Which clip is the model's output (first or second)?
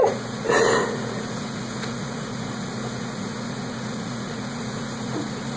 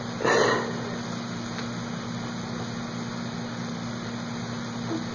first